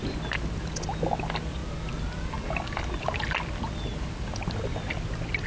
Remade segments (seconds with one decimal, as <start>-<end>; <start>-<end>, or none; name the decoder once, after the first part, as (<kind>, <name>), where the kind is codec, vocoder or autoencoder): none